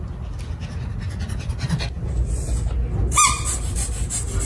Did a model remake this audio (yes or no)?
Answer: no